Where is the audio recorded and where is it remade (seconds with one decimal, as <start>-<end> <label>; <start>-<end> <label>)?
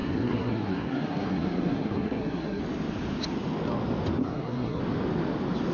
0.0-2.6 remade; 2.6-4.2 recorded; 4.2-4.8 remade; 4.8-5.7 recorded